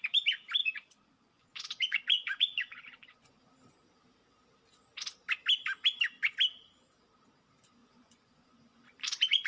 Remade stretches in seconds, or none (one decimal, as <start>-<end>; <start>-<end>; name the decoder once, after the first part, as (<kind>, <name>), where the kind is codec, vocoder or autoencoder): 0.6-3.4 (vocoder, Vocos); 7.8-9.5